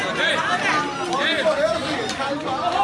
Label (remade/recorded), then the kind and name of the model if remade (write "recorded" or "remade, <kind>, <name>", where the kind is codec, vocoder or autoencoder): recorded